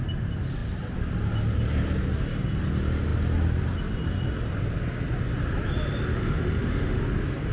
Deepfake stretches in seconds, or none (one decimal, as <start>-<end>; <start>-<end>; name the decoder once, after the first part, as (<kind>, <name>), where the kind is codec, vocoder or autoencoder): 6.1-7.0 (autoencoder, DAC-VAE)